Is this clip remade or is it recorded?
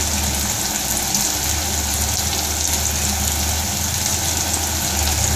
recorded